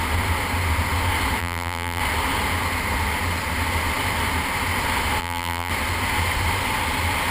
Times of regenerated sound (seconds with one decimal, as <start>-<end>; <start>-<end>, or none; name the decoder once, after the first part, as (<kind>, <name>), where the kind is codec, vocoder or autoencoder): 1.4-2.0 (vocoder, BigVGAN v2); 5.2-5.7